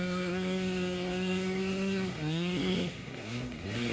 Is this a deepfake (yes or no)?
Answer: yes